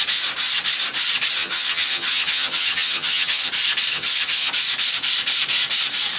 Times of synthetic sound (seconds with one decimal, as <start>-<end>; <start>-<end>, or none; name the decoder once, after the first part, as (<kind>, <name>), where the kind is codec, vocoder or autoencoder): 1.4-3.5 (vocoder, HiFi-GAN); 3.9-4.5